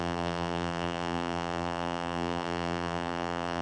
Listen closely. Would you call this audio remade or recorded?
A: remade